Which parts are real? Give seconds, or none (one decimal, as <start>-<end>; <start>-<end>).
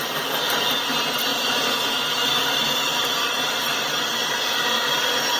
0.0-5.4